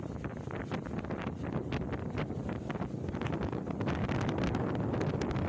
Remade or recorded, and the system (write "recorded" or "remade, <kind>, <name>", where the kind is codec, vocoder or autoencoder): recorded